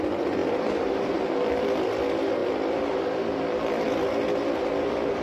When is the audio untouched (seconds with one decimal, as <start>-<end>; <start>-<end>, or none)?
0.0-5.2